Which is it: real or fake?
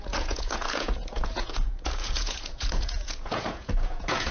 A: fake